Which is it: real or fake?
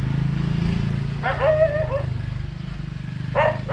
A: real